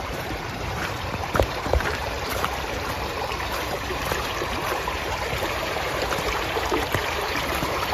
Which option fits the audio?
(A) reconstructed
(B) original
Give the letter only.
A